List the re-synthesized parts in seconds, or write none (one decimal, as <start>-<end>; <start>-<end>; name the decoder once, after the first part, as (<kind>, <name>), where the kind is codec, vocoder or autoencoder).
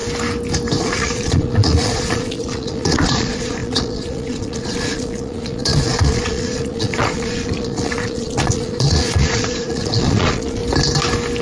0.8-10.6 (vocoder, Vocos)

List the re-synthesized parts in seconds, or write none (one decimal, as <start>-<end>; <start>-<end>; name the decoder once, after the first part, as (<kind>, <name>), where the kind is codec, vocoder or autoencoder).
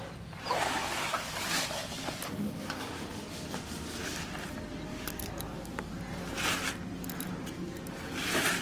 0.8-2.9 (codec, DAC); 4.9-6.0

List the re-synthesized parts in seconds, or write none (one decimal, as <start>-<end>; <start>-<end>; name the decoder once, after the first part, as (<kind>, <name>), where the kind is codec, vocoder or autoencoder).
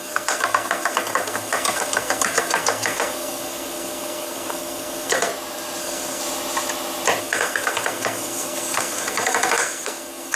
0.0-5.3 (codec, SNAC); 5.8-6.2; 7.2-10.4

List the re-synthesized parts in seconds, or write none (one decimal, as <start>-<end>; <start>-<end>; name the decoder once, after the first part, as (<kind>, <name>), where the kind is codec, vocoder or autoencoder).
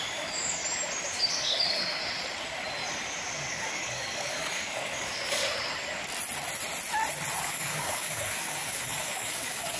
0.0-0.6 (codec, DAC); 1.3-2.0; 3.5-5.4; 7.4-9.8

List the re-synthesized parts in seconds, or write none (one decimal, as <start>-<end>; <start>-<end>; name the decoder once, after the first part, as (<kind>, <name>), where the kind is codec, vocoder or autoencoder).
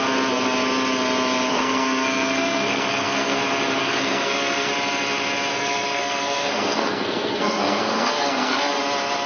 1.5-3.4 (codec, SNAC); 3.8-4.7; 5.5-8.8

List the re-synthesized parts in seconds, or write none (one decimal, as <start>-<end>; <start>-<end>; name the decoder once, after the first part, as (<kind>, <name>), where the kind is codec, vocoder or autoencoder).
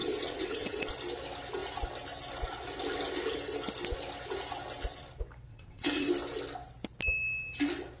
0.0-0.9 (vocoder, WaveNeXt); 5.5-6.1